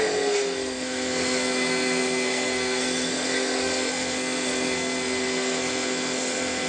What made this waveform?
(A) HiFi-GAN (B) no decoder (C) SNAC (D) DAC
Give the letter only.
C